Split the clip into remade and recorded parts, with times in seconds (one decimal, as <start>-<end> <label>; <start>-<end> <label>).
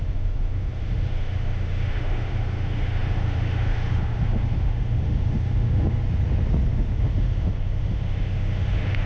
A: 0.0-6.0 remade; 6.0-6.7 recorded; 6.7-9.1 remade